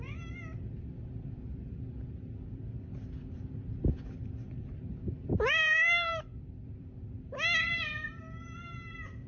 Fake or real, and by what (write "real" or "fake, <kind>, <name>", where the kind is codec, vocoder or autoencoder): fake, vocoder, BigVGAN v2